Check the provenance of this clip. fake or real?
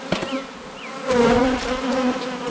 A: real